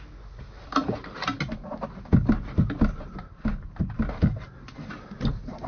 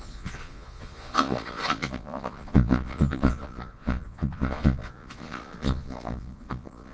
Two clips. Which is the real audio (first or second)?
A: first